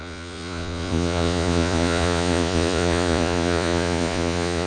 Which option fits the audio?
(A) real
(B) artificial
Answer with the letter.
B